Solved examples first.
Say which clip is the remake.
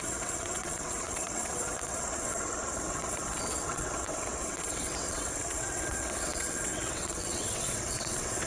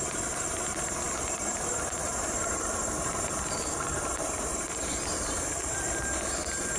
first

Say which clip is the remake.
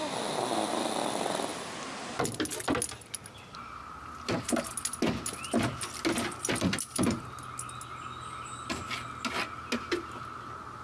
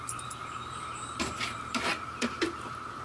second